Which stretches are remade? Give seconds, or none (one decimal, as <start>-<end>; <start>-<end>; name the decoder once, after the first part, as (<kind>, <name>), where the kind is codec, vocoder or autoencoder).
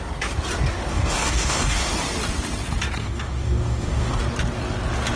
0.9-1.9 (codec, DAC); 3.0-4.2